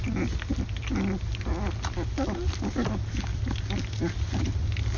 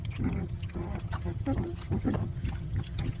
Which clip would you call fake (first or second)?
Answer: second